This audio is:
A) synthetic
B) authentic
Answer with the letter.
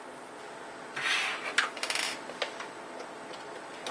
B